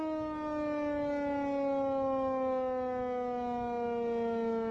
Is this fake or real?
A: real